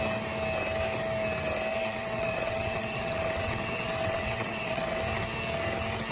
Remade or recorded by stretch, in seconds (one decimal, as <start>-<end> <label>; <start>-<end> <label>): 0.0-1.7 recorded; 1.7-5.0 remade; 5.0-6.1 recorded